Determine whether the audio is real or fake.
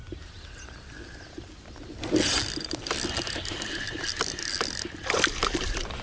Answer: real